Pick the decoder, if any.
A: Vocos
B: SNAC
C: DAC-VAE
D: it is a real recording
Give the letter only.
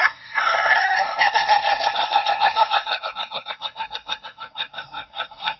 B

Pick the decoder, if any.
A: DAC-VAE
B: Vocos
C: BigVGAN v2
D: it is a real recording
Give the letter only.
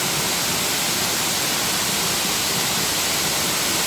D